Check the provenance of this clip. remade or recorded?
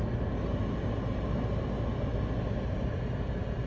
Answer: recorded